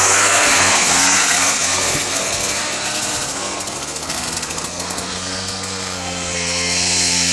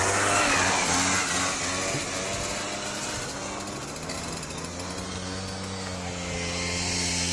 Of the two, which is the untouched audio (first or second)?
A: second